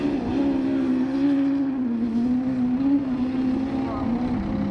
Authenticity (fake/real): real